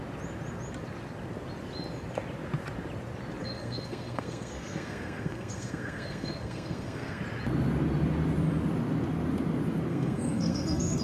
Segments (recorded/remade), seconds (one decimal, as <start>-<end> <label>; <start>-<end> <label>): 0.0-3.4 recorded; 3.4-7.2 remade; 7.2-9.9 recorded; 9.9-11.0 remade